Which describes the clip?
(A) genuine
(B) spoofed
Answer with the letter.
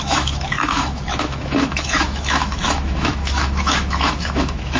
B